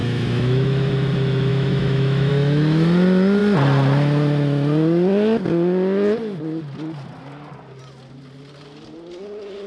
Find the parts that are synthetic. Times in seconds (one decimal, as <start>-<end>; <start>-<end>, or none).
0.0-0.9; 1.5-2.3